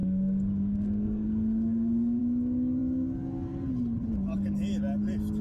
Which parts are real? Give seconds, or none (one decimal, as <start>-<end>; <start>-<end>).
2.2-5.4

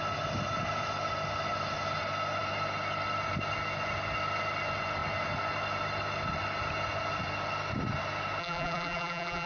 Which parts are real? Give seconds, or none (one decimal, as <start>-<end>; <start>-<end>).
0.0-8.4

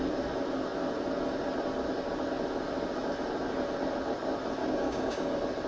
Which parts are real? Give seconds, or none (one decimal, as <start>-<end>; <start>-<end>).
0.0-4.6; 5.3-5.7

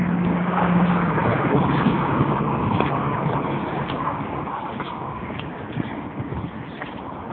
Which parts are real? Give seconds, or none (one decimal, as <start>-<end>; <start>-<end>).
6.3-7.3

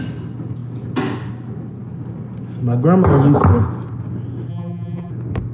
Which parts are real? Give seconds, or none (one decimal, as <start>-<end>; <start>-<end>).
0.0-4.5; 5.1-5.5